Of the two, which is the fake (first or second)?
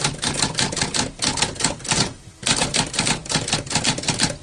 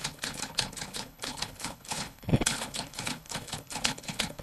second